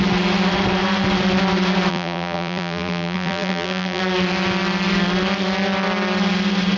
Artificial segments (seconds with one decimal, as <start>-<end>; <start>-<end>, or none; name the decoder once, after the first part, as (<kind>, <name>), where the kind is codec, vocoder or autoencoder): 1.9-4.0 (vocoder, BigVGAN v2)